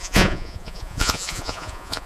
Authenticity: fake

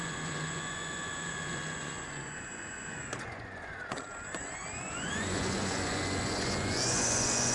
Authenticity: fake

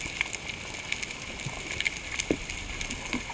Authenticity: real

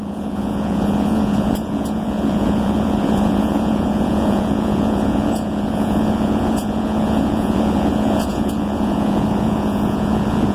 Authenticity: fake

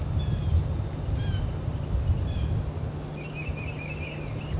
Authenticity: real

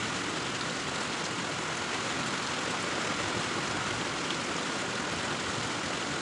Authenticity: real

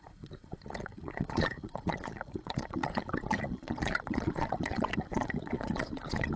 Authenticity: fake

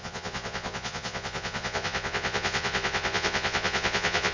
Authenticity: fake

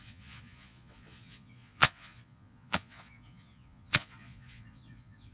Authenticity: fake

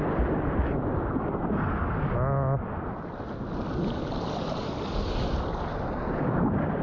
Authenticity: real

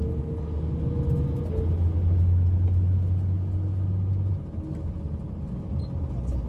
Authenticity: real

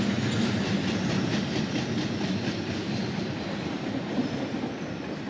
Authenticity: real